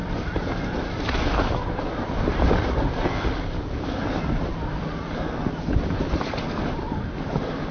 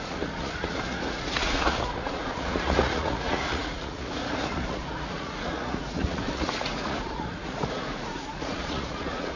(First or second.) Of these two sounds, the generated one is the second